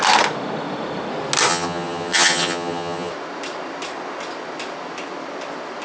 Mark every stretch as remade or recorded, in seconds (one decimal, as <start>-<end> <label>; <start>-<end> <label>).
0.0-1.5 recorded; 1.5-3.1 remade; 3.1-5.8 recorded